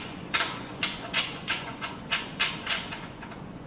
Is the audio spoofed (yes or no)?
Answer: yes